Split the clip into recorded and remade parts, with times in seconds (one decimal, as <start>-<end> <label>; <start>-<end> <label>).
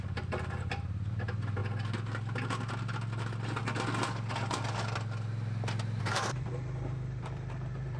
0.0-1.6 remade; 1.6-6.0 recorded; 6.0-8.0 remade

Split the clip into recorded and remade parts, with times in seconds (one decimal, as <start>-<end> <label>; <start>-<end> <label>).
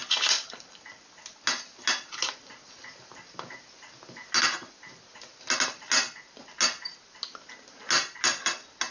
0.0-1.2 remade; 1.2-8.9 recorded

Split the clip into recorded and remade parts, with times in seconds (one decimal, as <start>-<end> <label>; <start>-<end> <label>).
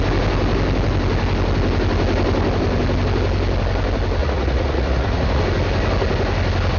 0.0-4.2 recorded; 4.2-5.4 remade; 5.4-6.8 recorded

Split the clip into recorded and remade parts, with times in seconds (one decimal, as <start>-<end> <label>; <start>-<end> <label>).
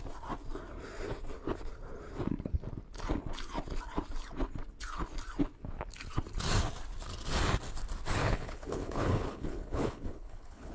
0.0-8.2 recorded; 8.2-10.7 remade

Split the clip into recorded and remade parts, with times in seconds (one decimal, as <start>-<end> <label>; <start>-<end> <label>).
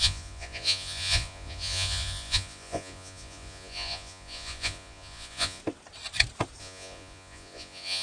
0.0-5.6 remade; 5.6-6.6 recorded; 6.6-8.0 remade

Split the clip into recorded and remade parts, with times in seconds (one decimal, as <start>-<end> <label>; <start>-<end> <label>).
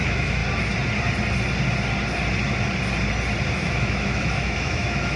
0.0-0.4 remade; 0.4-3.5 recorded; 3.5-5.2 remade